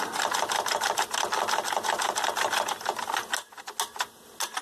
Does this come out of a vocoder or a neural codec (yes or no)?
no